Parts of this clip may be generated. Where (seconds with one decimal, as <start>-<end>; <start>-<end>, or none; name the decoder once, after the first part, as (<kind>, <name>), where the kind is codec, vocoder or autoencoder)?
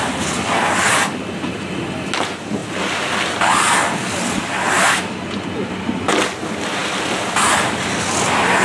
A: none